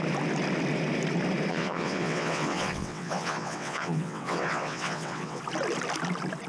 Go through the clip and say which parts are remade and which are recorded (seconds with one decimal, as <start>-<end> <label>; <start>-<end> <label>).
0.0-1.5 recorded; 1.5-5.4 remade; 5.4-6.5 recorded